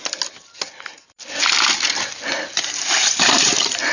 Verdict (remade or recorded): recorded